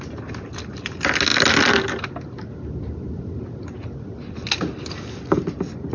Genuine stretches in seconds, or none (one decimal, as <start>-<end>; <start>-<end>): 0.0-5.9